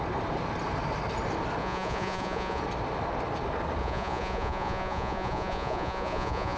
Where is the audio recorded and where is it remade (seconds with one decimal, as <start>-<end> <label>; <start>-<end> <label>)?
0.0-1.6 recorded; 1.6-2.6 remade; 2.6-3.8 recorded; 3.8-6.6 remade